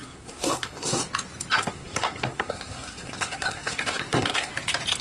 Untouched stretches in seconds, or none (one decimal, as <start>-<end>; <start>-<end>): 1.0-1.5; 4.5-5.0